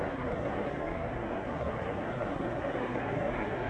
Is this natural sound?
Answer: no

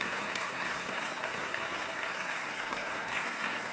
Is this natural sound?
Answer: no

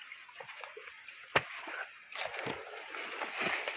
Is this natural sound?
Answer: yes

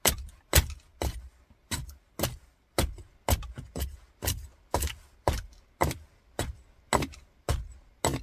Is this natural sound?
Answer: yes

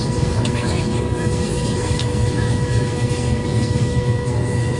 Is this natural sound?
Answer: no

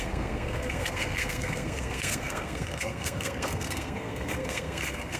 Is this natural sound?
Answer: no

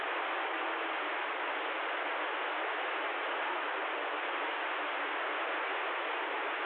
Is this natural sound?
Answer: yes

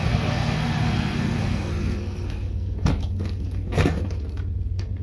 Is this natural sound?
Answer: no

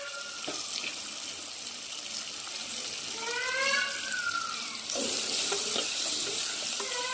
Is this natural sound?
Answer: yes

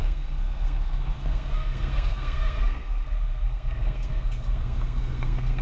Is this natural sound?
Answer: no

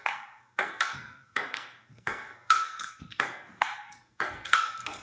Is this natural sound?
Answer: no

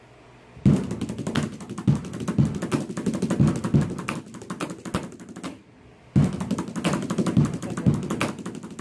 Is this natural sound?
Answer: yes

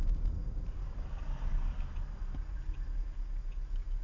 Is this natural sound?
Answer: yes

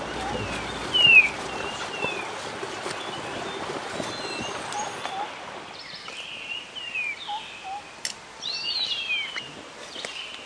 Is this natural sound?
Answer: yes